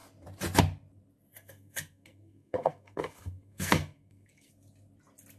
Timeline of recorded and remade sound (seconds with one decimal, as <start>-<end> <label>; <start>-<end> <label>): 0.0-1.3 recorded; 1.3-4.5 remade; 4.5-5.4 recorded

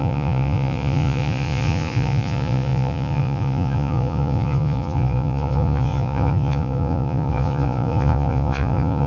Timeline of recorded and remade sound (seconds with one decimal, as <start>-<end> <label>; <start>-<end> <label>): 0.0-9.1 remade

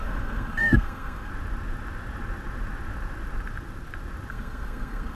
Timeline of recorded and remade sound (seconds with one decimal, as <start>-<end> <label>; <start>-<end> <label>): 0.0-1.3 remade; 1.3-4.3 recorded; 4.3-5.2 remade

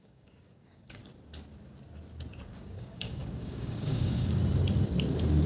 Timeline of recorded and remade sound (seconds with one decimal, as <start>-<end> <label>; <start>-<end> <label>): 0.0-1.0 remade; 1.0-2.5 recorded; 2.5-4.4 remade; 4.4-5.5 recorded

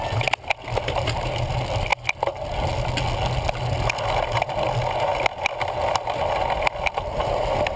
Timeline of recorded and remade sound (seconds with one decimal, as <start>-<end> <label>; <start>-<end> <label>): 0.0-7.8 recorded